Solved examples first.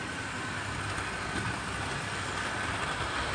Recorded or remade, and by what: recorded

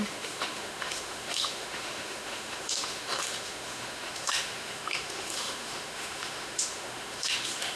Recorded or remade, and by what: remade, autoencoder, DAC-VAE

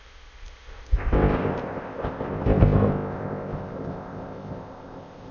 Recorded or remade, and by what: remade, codec, ZipCodec